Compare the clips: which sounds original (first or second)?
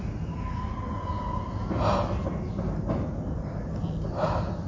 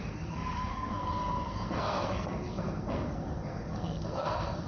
first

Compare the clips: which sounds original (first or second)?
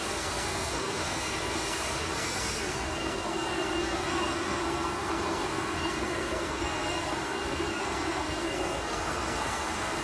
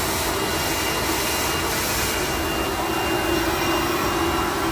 second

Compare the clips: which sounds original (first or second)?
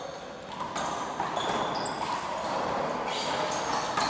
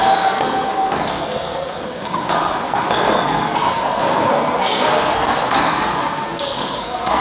first